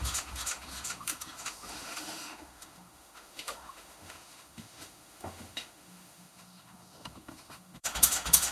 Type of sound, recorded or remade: remade